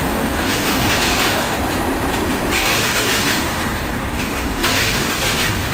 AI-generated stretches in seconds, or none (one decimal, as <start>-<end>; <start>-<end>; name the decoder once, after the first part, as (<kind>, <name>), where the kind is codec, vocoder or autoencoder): 0.0-1.6 (codec, DAC); 2.5-5.7